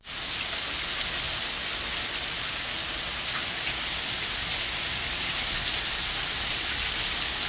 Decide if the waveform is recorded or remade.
recorded